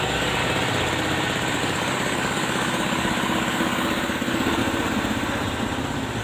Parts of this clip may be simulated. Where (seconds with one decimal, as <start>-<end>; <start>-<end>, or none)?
0.0-0.4; 1.6-4.6